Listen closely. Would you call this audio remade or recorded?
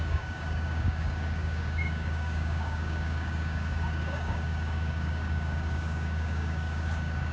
remade